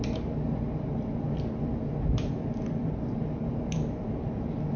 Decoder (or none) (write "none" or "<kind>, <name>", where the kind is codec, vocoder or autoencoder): vocoder, BigVGAN v2